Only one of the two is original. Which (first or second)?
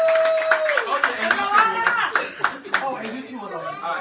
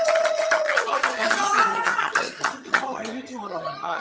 first